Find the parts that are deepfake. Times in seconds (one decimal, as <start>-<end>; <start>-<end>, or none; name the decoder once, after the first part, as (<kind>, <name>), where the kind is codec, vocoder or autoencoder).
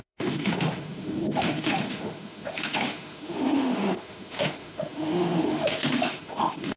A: 0.0-6.8 (autoencoder, DAC-VAE)